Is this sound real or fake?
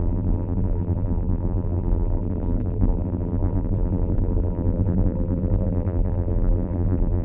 fake